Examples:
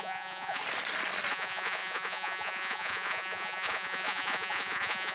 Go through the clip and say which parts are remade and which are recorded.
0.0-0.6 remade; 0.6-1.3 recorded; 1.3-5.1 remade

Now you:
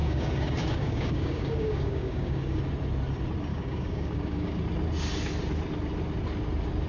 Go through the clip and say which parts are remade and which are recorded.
0.0-2.6 remade; 2.6-3.5 recorded; 3.5-4.6 remade; 4.6-6.9 recorded

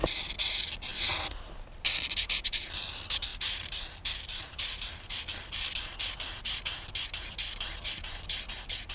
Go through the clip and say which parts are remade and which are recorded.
0.0-3.3 recorded; 3.3-5.2 remade; 5.2-8.9 recorded

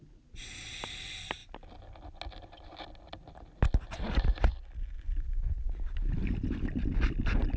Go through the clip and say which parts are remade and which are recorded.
0.0-7.6 recorded

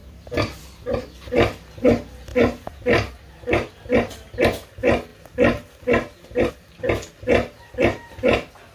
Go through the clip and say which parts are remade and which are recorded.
0.0-0.7 remade; 0.7-8.7 recorded

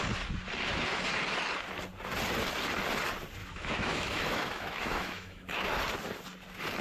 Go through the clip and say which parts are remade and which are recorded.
0.0-3.4 recorded; 3.4-5.8 remade; 5.8-6.8 recorded